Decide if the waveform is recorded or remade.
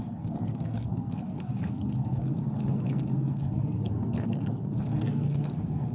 remade